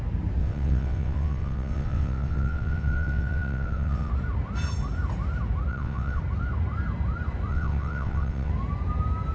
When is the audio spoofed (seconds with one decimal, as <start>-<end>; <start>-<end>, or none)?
0.4-4.1; 5.7-6.2; 7.5-8.5